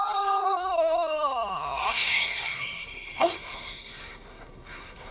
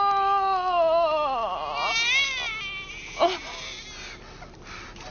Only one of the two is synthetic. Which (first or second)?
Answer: first